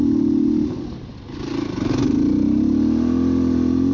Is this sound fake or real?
real